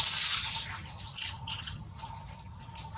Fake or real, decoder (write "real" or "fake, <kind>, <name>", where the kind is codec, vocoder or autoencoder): real